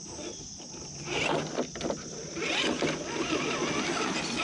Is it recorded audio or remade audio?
recorded